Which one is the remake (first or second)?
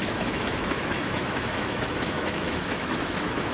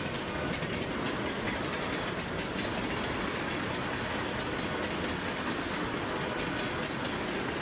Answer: first